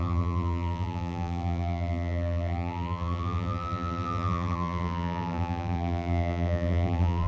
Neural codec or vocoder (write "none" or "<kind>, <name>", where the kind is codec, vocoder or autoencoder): vocoder, BigVGAN v2